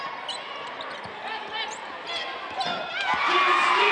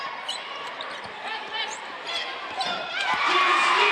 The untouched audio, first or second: first